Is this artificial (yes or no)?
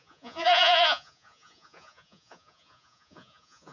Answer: yes